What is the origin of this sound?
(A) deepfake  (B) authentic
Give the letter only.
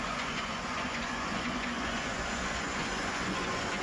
A